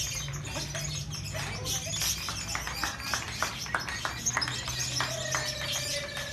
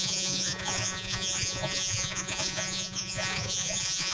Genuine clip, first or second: first